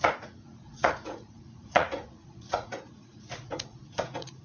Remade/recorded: remade